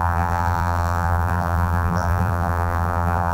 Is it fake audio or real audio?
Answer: fake